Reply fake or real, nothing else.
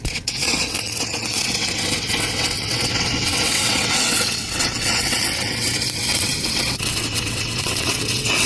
fake